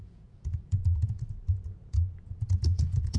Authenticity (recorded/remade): remade